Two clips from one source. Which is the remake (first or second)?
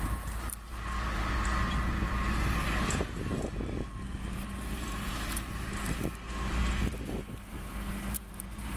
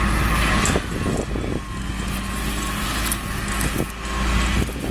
first